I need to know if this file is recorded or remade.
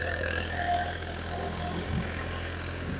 remade